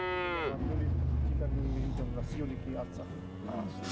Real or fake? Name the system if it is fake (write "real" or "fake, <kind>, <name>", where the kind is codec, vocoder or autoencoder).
real